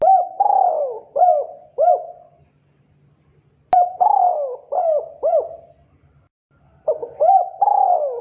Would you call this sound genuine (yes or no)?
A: yes